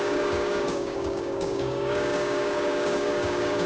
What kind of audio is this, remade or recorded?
remade